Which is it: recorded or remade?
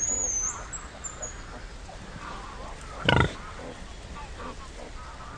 recorded